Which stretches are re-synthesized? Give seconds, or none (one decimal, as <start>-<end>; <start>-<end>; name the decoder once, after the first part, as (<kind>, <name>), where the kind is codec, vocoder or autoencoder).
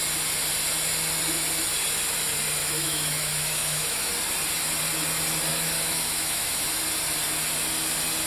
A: 2.6-4.1 (autoencoder, DAC-VAE); 5.5-6.7